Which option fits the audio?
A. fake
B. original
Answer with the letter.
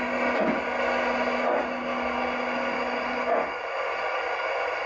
B